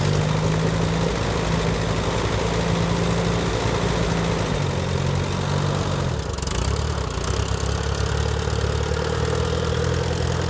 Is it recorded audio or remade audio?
recorded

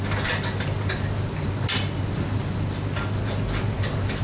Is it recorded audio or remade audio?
recorded